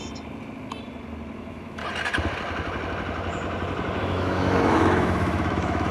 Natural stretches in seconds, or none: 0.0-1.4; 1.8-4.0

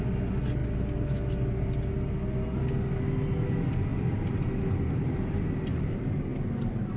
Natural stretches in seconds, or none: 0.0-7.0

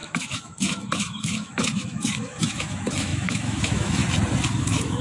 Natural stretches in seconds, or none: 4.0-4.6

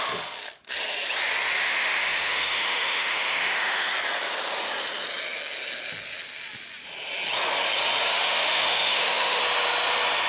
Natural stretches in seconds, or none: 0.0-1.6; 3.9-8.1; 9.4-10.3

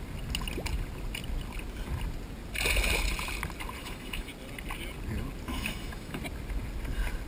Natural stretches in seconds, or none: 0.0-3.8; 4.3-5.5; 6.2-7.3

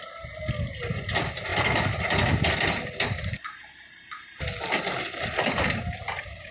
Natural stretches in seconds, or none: 0.0-6.5